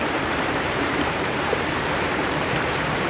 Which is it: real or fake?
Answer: fake